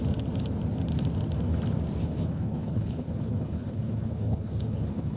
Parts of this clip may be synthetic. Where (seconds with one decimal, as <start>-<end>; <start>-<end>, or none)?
2.0-5.2